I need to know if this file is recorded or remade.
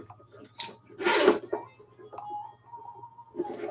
recorded